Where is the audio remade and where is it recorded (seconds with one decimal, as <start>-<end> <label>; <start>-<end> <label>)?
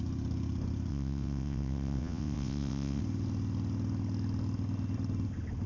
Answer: 0.0-0.9 recorded; 0.9-3.0 remade; 3.0-5.7 recorded